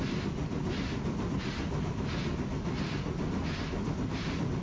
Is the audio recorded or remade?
recorded